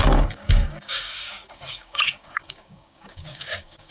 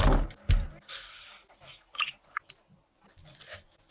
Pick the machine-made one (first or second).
first